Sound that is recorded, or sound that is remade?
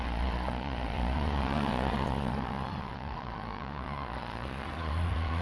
remade